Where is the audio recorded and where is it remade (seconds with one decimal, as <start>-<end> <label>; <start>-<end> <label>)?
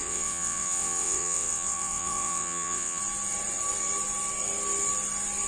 0.0-3.0 remade; 3.0-5.5 recorded